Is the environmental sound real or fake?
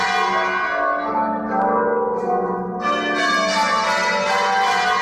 real